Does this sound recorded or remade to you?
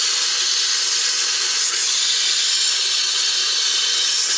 recorded